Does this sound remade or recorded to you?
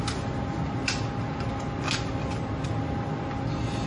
recorded